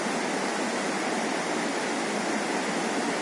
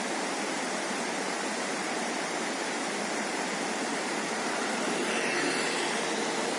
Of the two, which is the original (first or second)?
first